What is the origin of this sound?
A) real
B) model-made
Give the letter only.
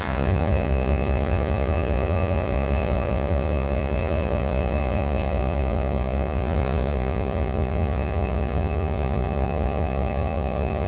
B